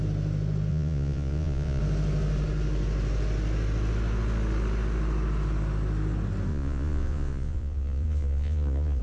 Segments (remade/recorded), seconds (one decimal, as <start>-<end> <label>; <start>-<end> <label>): 0.0-0.7 recorded; 0.7-1.8 remade; 1.8-6.5 recorded; 6.5-9.0 remade